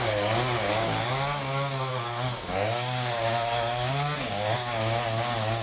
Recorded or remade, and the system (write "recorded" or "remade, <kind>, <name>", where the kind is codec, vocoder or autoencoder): remade, codec, DAC